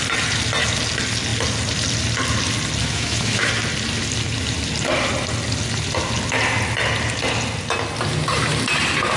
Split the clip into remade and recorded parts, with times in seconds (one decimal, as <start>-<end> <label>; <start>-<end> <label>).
0.0-2.8 recorded; 2.8-3.5 remade; 3.5-9.2 recorded